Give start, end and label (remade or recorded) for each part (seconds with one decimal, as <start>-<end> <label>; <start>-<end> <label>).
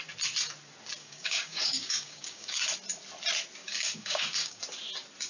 0.0-1.0 recorded; 1.0-2.6 remade; 2.6-3.6 recorded; 3.6-4.6 remade; 4.6-5.3 recorded